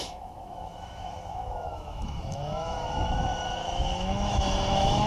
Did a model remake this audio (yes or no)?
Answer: yes